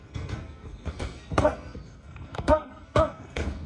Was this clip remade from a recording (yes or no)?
yes